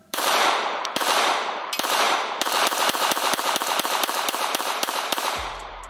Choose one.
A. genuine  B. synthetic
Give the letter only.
B